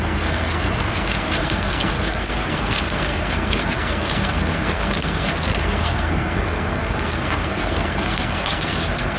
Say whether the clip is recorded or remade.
remade